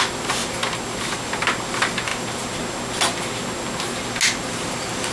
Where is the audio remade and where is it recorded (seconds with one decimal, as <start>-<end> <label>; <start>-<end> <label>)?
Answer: 0.0-5.1 recorded